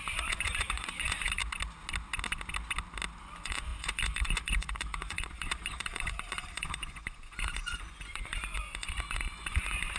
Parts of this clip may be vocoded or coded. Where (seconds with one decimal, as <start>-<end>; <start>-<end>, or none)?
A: 0.0-1.4; 3.2-10.0